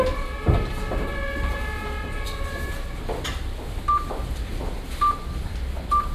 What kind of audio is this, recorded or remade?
recorded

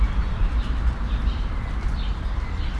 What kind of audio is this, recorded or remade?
recorded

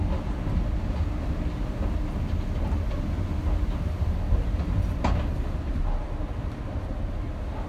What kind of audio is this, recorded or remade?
recorded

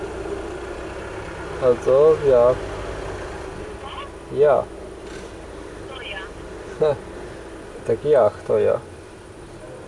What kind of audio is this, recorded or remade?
recorded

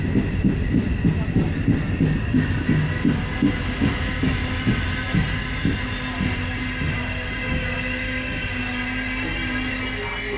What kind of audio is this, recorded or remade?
recorded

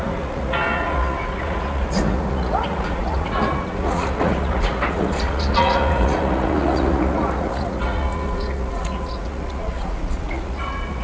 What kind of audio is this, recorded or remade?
remade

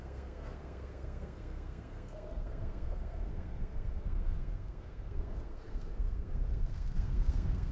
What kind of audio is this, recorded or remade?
remade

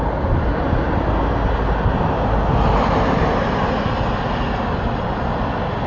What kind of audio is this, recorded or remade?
recorded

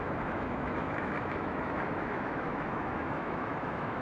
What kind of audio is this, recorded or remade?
remade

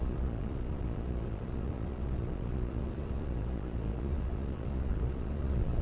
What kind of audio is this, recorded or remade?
remade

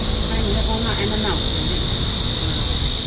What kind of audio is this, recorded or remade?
recorded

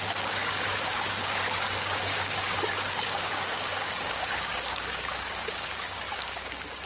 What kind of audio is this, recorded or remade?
remade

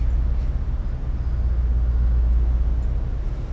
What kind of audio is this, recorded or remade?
recorded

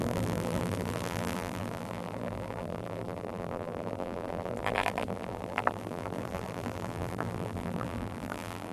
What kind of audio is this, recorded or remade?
remade